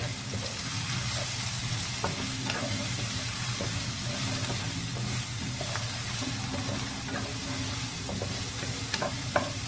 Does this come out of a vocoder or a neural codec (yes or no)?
no